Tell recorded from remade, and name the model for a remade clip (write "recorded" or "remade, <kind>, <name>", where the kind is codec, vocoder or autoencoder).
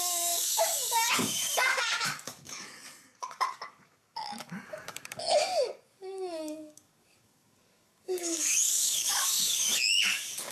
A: remade, codec, DAC